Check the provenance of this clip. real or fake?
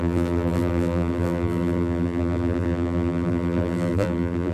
fake